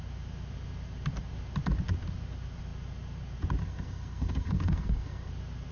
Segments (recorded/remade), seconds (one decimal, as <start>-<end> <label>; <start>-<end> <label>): 0.0-3.6 recorded; 3.6-5.3 remade; 5.3-5.7 recorded